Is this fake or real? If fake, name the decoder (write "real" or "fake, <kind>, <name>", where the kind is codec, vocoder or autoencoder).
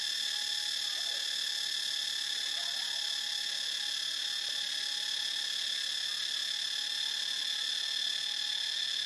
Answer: real